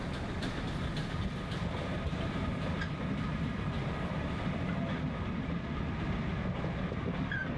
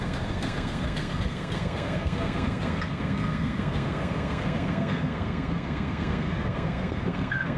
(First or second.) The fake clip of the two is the second